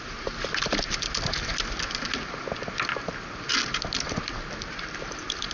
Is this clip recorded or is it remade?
recorded